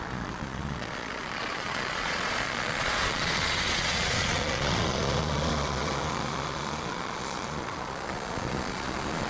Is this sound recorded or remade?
remade